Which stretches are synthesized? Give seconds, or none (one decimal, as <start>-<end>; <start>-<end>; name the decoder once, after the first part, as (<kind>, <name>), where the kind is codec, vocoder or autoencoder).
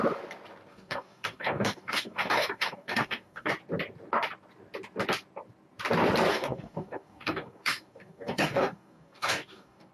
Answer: 0.7-3.5 (codec, DAC); 6.3-9.9